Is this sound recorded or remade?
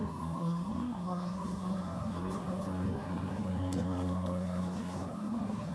remade